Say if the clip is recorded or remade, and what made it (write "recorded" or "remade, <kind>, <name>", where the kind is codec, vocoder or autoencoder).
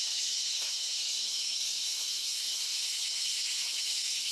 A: remade, codec, SNAC